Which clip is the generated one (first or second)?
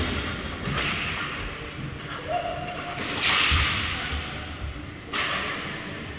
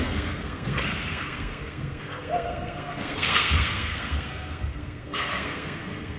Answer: second